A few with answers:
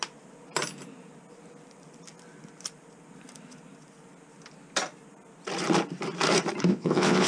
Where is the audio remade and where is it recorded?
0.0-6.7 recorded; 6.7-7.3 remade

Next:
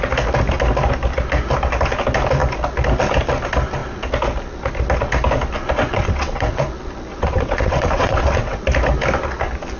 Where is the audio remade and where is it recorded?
0.0-5.8 recorded; 5.8-6.6 remade; 6.6-7.1 recorded; 7.1-8.6 remade; 8.6-9.8 recorded

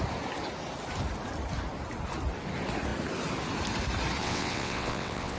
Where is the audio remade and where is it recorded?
0.0-4.2 recorded; 4.2-5.4 remade

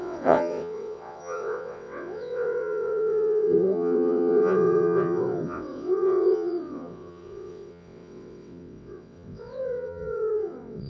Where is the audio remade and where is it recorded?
0.0-10.9 remade

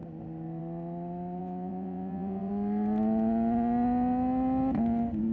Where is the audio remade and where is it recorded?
0.0-1.4 recorded; 1.4-2.5 remade; 2.5-5.3 recorded

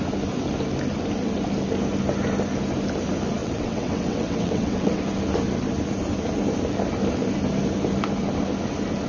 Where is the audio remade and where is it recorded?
0.0-3.4 recorded; 3.4-5.0 remade; 5.0-9.1 recorded

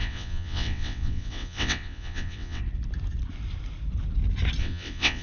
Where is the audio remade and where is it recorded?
0.0-2.6 remade; 2.6-4.6 recorded; 4.6-5.2 remade

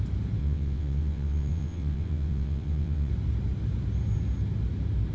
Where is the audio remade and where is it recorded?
0.0-0.4 recorded; 0.4-3.1 remade; 3.1-5.1 recorded